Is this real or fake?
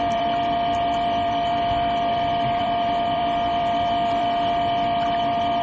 fake